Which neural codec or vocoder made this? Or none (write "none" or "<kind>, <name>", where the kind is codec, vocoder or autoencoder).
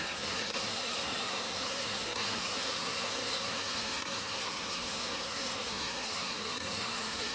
codec, SNAC